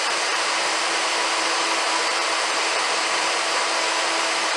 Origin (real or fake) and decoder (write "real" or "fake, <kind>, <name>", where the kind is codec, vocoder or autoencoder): fake, vocoder, BigVGAN v2